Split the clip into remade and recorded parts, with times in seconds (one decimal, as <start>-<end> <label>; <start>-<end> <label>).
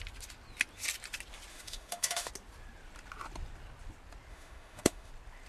0.0-1.5 recorded; 1.5-2.3 remade; 2.3-4.3 recorded; 4.3-5.1 remade; 5.1-5.5 recorded